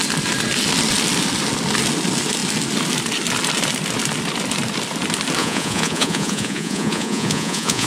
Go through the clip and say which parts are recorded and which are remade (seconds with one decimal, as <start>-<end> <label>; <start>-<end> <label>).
0.0-5.4 recorded; 5.4-7.9 remade